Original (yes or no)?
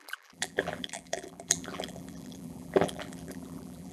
no